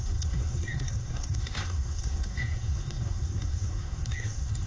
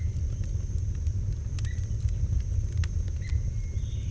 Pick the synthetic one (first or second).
first